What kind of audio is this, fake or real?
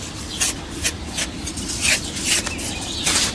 real